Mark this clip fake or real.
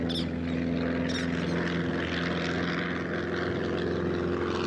real